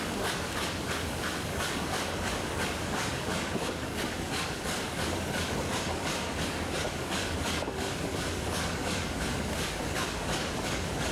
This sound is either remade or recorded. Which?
remade